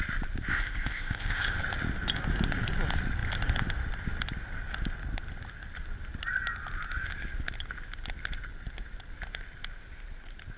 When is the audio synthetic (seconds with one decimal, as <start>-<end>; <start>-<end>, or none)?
0.5-1.6